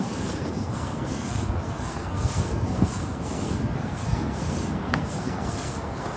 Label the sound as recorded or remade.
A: remade